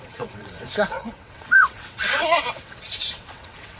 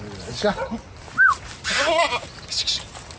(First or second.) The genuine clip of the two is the second